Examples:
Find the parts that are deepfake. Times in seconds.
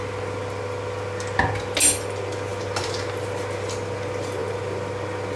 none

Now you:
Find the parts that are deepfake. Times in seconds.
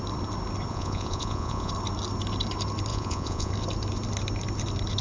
0.7-1.7 (vocoder, Vocos); 2.9-3.5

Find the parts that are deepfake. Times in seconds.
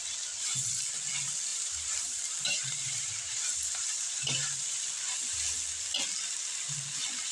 1.5-4.8 (vocoder, BigVGAN v2)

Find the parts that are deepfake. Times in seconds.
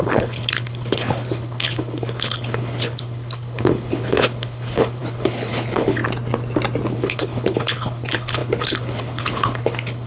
0.0-6.0 (codec, HILCodec); 6.9-10.1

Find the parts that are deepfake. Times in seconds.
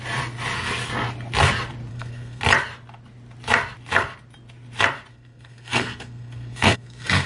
1.9-2.4 (codec, SNAC); 5.1-7.3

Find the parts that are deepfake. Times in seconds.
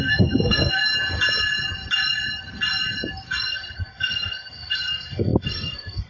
0.0-0.8 (codec, SNAC); 3.4-6.1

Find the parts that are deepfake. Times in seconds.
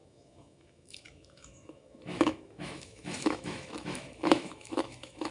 0.0-5.3 (autoencoder, DAC-VAE)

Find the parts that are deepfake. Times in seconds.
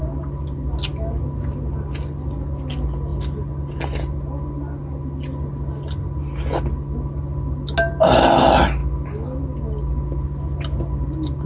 none